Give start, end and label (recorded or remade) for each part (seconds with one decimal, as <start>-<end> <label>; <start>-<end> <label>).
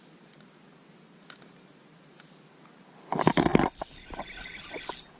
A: 0.0-5.2 recorded